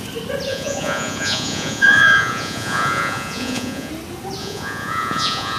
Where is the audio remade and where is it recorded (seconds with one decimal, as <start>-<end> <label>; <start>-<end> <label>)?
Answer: 0.0-0.5 recorded; 0.5-3.9 remade; 3.9-4.4 recorded; 4.4-5.6 remade